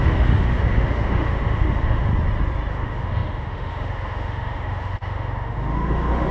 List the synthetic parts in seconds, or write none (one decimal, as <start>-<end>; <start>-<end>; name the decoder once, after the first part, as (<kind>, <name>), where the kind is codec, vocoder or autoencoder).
0.0-2.1 (autoencoder, DAC-VAE); 2.7-6.3